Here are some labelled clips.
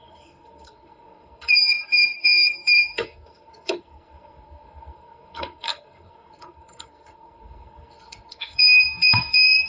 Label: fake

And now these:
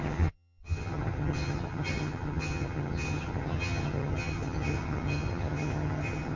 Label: fake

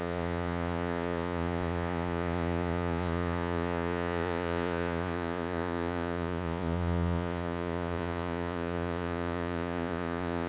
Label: fake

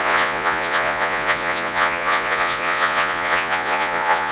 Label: fake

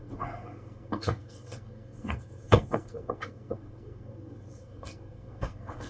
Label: fake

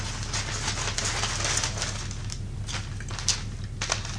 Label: real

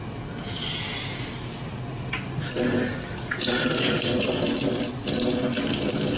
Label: real